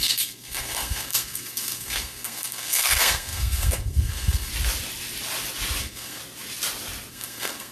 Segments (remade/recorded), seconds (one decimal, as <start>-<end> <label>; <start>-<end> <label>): 0.0-4.5 remade; 4.5-5.8 recorded; 5.8-6.2 remade; 6.2-7.1 recorded; 7.1-7.7 remade